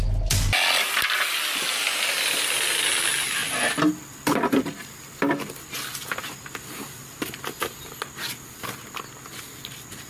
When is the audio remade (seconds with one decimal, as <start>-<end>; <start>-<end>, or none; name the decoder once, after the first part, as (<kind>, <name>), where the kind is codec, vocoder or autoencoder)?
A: none